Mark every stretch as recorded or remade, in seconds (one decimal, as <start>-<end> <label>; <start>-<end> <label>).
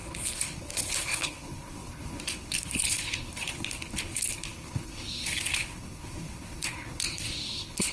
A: 0.0-7.9 remade